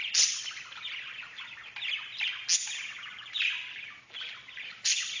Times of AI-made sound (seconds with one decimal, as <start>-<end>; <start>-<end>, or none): 0.0-1.6; 4.7-5.2